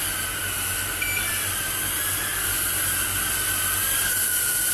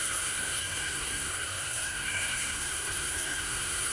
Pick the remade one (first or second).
second